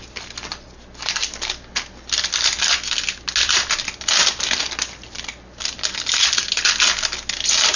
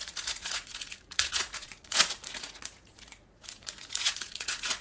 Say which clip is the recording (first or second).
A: first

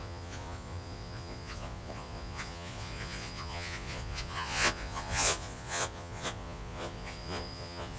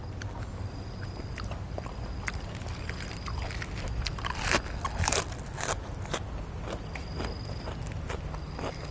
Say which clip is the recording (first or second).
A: second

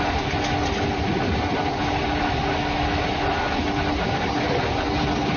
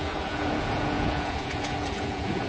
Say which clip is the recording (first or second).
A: first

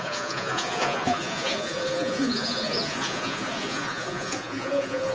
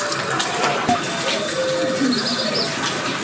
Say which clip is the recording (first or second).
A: second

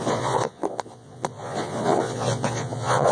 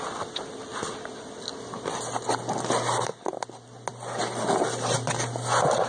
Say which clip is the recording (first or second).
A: second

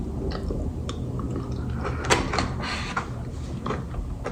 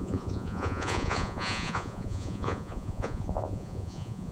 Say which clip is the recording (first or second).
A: first